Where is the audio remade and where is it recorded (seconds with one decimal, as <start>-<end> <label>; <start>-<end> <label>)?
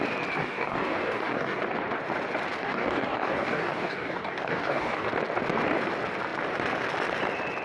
0.0-0.4 recorded; 0.4-1.6 remade; 1.6-2.6 recorded; 2.6-5.1 remade; 5.1-7.6 recorded